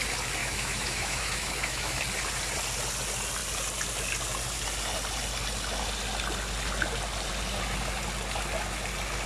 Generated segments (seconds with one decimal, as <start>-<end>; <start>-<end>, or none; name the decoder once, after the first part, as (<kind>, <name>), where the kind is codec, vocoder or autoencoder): 0.4-2.0 (autoencoder, DAC-VAE)